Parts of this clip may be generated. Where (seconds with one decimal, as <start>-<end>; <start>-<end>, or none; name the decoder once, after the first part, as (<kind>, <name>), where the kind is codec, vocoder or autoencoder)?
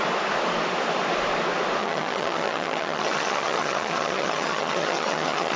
1.8-5.6 (vocoder, HiFi-GAN)